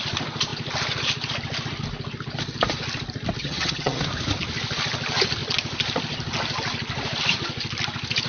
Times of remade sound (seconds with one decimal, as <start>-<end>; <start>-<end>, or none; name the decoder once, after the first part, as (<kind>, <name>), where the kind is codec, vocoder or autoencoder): 3.4-4.0 (vocoder, HiFi-GAN)